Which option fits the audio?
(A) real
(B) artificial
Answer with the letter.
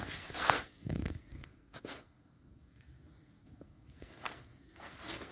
B